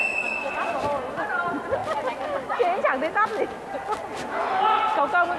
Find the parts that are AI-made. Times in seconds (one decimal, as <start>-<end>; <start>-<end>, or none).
none